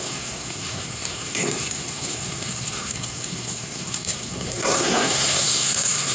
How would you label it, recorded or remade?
remade